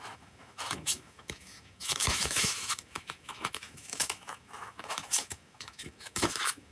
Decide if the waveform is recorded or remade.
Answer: remade